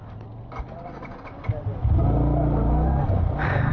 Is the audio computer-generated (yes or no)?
no